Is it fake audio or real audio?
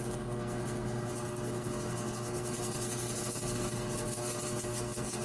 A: fake